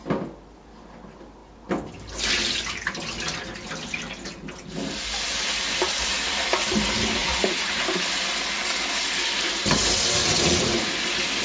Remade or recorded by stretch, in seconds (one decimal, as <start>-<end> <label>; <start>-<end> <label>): 0.0-7.2 recorded; 7.2-7.8 remade; 7.8-10.2 recorded; 10.2-10.9 remade; 10.9-11.4 recorded